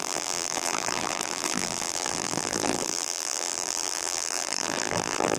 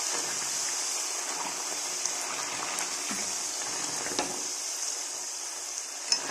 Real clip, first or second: second